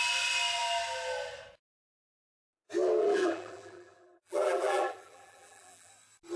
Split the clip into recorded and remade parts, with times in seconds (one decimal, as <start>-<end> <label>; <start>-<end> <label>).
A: 0.0-3.0 recorded; 3.0-5.9 remade; 5.9-6.4 recorded